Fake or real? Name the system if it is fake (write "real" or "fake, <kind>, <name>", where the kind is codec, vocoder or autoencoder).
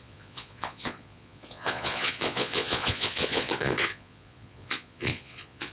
fake, vocoder, Vocos